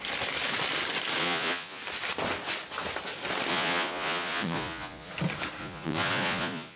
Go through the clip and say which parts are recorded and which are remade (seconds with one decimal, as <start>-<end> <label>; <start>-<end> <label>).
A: 0.0-1.2 recorded; 1.2-1.8 remade; 1.8-3.5 recorded; 3.5-5.1 remade; 5.1-5.6 recorded; 5.6-6.8 remade